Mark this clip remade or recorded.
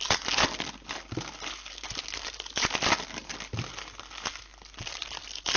recorded